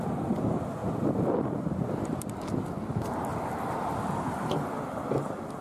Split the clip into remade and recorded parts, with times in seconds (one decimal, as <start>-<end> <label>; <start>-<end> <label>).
0.0-0.8 remade; 0.8-2.9 recorded; 2.9-3.3 remade; 3.3-3.8 recorded; 3.8-5.6 remade

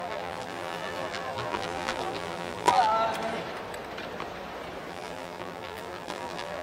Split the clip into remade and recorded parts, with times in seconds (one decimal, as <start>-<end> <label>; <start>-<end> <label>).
0.0-2.9 remade; 2.9-4.9 recorded; 4.9-6.6 remade

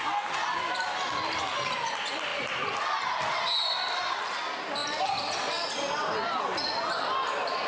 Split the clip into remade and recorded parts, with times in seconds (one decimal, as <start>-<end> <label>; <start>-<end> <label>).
0.0-7.7 recorded